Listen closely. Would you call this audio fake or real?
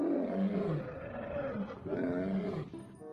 real